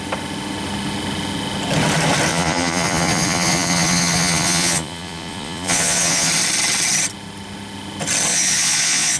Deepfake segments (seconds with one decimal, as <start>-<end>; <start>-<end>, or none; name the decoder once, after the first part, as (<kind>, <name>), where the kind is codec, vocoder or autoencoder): 2.3-6.3 (vocoder, Vocos); 8.3-9.2